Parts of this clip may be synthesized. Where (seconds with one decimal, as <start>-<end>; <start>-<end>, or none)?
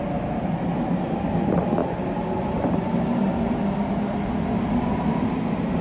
none